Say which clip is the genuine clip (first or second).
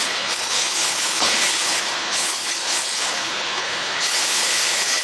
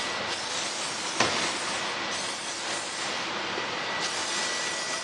second